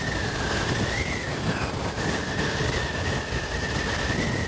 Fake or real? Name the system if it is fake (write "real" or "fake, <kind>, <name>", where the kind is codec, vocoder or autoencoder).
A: real